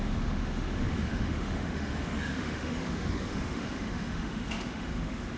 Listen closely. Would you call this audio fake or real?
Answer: fake